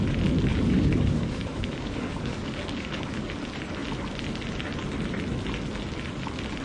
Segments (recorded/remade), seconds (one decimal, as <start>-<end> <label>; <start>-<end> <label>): 0.0-0.5 recorded; 0.5-3.3 remade; 3.3-6.6 recorded